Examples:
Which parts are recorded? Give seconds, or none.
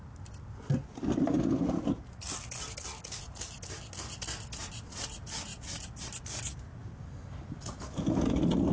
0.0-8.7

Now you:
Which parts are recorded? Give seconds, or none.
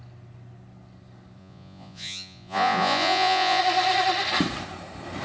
0.0-1.4; 3.6-5.2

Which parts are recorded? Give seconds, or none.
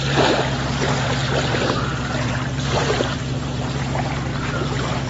0.0-1.9; 3.2-4.3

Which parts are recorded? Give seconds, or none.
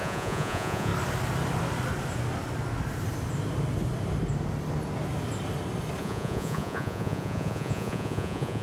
0.9-6.0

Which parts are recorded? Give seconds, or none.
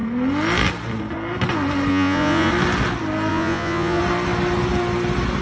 0.0-1.9; 2.5-3.3; 4.0-5.4